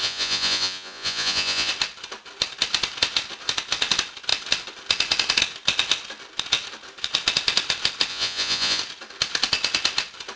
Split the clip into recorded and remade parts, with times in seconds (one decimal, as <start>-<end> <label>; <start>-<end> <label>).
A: 0.0-1.7 remade; 1.7-8.1 recorded; 8.1-8.8 remade; 8.8-10.4 recorded